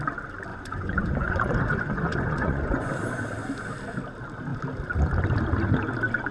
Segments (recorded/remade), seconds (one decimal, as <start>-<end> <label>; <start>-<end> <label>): 0.0-0.5 recorded; 0.5-2.9 remade; 2.9-6.3 recorded